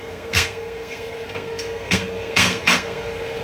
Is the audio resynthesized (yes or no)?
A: yes